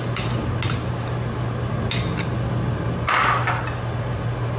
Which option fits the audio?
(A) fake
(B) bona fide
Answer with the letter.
B